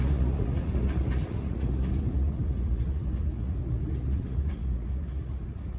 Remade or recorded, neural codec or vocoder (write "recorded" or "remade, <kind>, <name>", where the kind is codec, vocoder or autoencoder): remade, vocoder, Vocos